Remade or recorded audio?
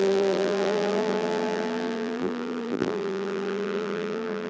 remade